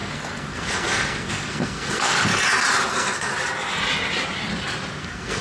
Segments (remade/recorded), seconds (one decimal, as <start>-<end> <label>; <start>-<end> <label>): 0.0-2.3 remade; 2.3-2.9 recorded; 2.9-3.3 remade; 3.3-5.0 recorded; 5.0-5.4 remade